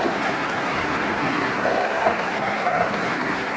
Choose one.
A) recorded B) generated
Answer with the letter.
B